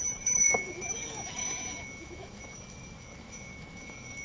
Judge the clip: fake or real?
fake